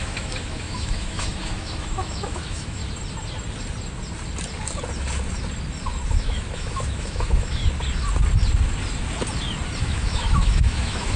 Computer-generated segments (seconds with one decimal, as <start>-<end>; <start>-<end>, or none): 0.0-2.8; 6.1-7.6; 9.8-11.2

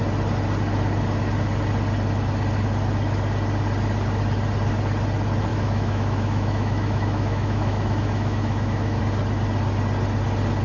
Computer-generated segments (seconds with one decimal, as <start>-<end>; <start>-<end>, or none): 5.5-9.0